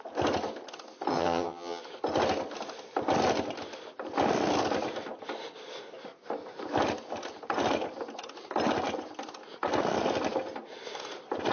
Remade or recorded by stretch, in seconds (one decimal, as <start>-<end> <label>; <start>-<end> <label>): 0.0-1.1 recorded; 1.1-1.8 remade; 1.8-11.5 recorded

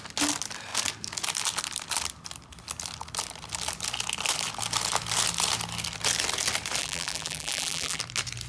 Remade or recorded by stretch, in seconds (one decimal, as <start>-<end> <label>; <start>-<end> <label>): 0.0-6.8 recorded; 6.8-8.0 remade; 8.0-8.5 recorded

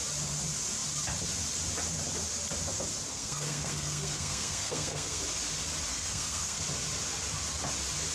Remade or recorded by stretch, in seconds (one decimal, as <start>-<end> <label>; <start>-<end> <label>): 0.0-3.1 recorded; 3.1-5.2 remade; 5.2-5.9 recorded; 5.9-6.6 remade; 6.6-8.1 recorded

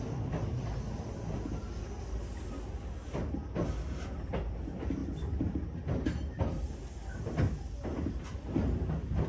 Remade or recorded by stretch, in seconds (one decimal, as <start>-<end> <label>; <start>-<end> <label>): 0.0-9.3 recorded

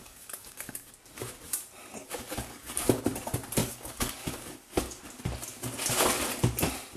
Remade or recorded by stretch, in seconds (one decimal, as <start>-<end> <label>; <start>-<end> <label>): 0.0-0.9 remade; 0.9-2.0 recorded; 2.0-3.0 remade; 3.0-3.6 recorded; 3.6-5.0 remade; 5.0-7.0 recorded